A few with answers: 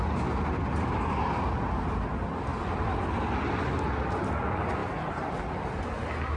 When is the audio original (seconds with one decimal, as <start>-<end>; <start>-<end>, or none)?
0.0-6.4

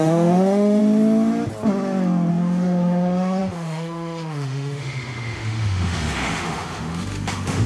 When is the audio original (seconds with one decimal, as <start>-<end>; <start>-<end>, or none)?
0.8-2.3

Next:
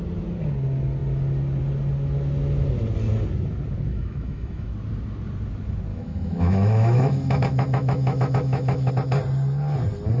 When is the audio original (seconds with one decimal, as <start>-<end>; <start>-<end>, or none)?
0.0-3.9; 4.7-5.9; 8.9-10.2

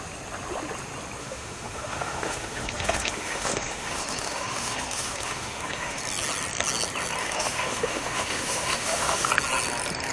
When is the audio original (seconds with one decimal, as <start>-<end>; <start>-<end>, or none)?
0.0-1.2; 6.0-7.2; 9.3-10.1

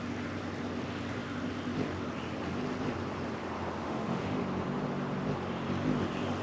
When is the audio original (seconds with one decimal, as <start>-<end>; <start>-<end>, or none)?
0.0-3.8; 4.4-6.4

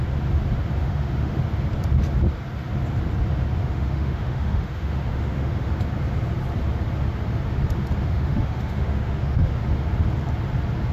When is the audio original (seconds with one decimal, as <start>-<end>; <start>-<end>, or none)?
0.0-0.8; 1.4-3.6; 5.7-8.0; 9.6-10.9

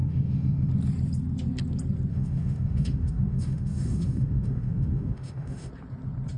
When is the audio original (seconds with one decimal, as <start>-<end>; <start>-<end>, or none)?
0.7-2.1; 5.7-6.4